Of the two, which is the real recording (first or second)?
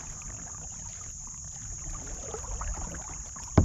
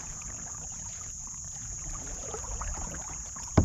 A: first